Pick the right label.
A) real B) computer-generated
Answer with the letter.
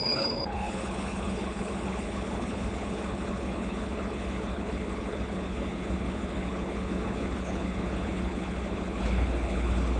B